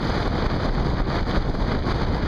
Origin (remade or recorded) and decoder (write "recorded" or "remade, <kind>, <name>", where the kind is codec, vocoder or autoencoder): recorded